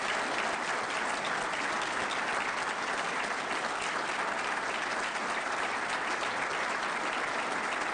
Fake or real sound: real